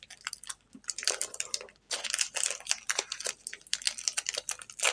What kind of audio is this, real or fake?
real